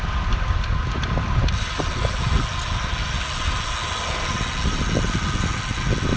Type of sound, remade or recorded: recorded